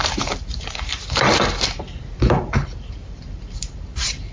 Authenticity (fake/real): fake